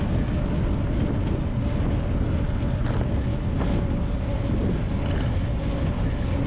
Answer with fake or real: real